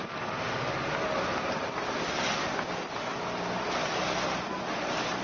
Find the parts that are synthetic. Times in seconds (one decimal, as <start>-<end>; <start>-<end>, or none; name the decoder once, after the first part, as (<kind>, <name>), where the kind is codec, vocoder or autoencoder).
3.9-4.8 (vocoder, BigVGAN v2)